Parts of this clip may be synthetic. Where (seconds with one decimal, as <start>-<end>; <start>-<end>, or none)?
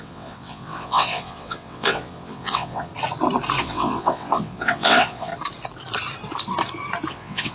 0.0-2.9; 3.6-5.3; 7.1-7.5